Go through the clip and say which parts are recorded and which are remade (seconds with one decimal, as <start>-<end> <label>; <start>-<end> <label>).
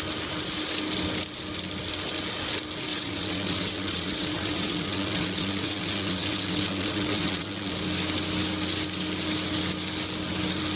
0.0-2.9 recorded; 2.9-7.7 remade; 7.7-10.8 recorded